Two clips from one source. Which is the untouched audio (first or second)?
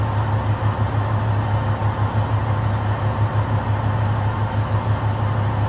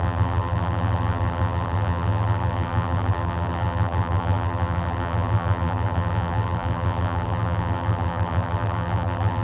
first